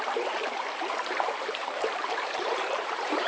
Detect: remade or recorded remade